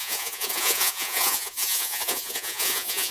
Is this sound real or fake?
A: fake